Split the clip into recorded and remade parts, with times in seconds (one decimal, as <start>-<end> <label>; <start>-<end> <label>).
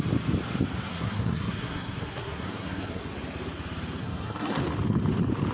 0.0-0.9 recorded; 0.9-3.0 remade; 3.0-4.0 recorded; 4.0-4.6 remade; 4.6-5.5 recorded